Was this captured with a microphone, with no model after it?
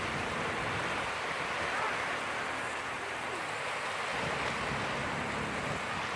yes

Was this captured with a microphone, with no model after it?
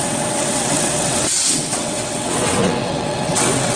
no